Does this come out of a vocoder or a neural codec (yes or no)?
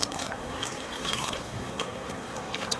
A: yes